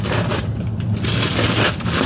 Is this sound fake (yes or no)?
no